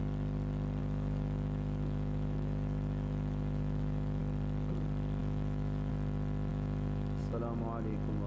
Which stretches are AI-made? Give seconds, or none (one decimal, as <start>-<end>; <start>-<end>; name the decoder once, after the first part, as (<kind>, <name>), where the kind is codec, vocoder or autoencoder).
0.8-4.2 (autoencoder, DAC-VAE); 5.2-5.9; 6.5-7.2